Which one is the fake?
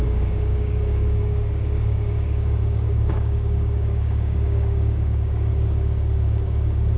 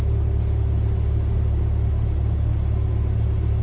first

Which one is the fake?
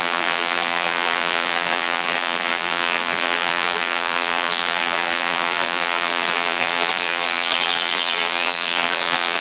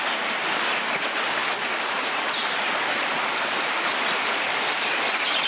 first